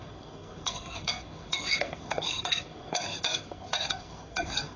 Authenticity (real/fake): fake